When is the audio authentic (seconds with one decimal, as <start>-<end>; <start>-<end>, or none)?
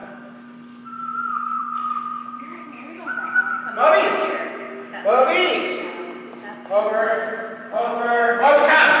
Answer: 0.0-9.0